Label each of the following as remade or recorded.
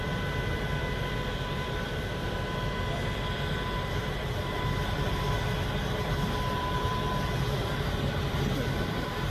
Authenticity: remade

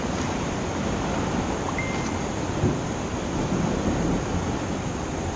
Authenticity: recorded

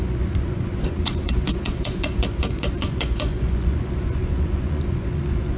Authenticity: remade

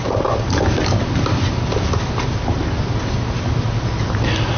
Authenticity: recorded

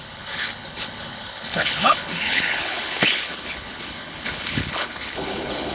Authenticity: remade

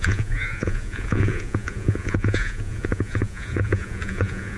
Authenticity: remade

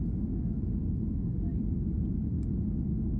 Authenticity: recorded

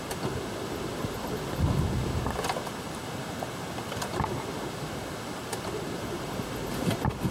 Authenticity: recorded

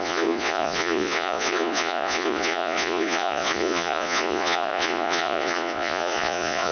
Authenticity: remade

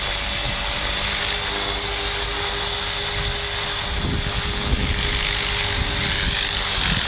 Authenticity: recorded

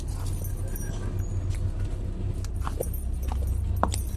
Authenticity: recorded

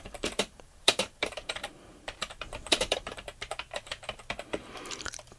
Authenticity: remade